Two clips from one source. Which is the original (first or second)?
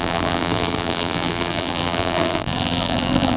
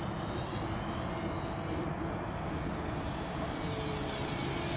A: second